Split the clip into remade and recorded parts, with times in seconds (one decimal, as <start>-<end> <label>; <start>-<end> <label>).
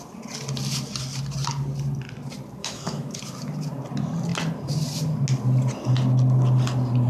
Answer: 0.0-2.6 recorded; 2.6-3.2 remade; 3.2-7.1 recorded